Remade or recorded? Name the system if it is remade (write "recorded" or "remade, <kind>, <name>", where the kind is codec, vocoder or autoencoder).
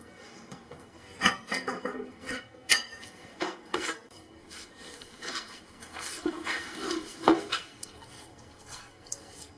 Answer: remade, codec, SNAC